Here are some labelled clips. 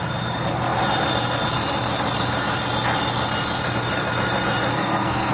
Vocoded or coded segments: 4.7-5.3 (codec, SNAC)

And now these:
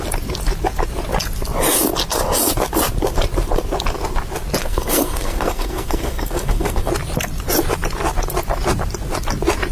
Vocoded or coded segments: 4.6-6.9 (codec, SNAC)

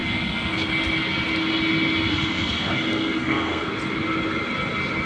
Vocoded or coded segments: 0.0-0.7 (codec, SNAC); 2.1-3.7

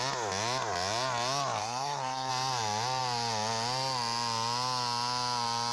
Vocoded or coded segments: 1.6-2.3 (codec, SNAC)

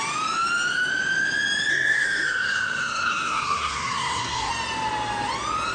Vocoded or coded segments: 1.7-4.5 (codec, SNAC)

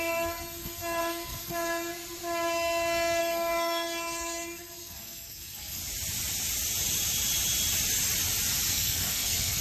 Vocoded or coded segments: 0.0-1.9 (codec, SNAC); 3.2-5.8; 8.7-9.6

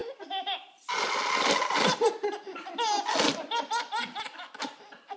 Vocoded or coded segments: none